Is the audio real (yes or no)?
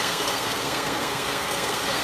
no